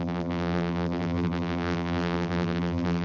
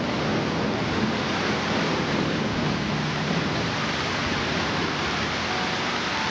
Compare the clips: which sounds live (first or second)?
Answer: second